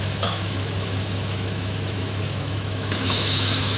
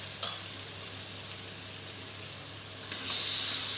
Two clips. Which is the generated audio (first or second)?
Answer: first